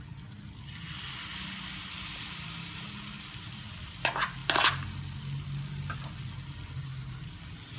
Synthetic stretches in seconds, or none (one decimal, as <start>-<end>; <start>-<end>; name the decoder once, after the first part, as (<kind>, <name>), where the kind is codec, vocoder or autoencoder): none